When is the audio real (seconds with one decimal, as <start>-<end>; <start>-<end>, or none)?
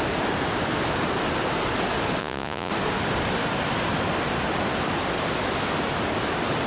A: 0.0-2.2; 2.7-6.7